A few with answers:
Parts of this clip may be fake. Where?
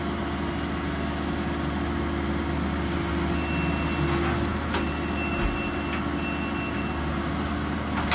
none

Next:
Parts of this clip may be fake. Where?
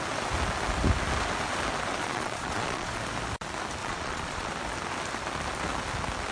2.0-3.0 (vocoder, Vocos); 3.8-4.5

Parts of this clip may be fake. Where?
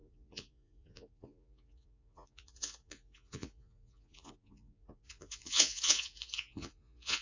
0.0-7.2 (vocoder, Vocos)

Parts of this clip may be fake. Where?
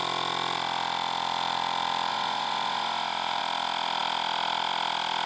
2.1-3.4 (vocoder, Vocos)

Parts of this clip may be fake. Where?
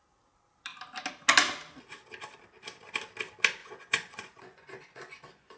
3.6-5.6 (vocoder, Vocos)